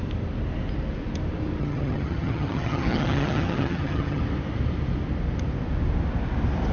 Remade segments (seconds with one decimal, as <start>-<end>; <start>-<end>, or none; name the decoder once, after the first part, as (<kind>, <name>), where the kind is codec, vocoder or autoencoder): 1.6-4.2 (vocoder, HiFi-GAN)